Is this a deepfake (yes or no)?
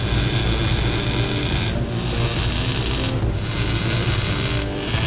no